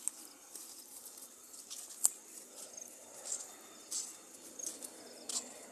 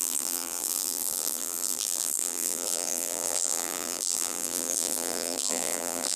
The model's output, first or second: second